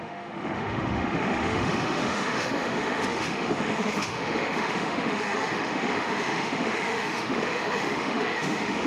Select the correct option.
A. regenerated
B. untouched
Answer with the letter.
A